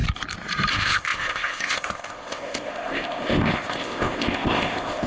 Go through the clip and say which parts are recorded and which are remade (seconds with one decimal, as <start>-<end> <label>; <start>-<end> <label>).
0.0-0.7 recorded; 0.7-5.1 remade